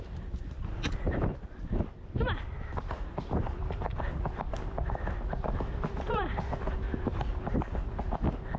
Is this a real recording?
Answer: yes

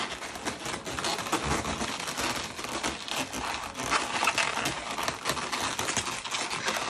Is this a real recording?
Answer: yes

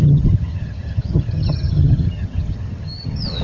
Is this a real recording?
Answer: no